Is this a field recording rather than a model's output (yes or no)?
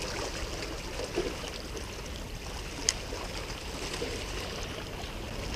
yes